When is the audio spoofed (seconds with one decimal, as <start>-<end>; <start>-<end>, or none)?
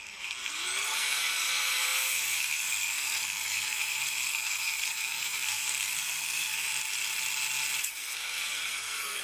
0.0-6.7; 7.8-9.2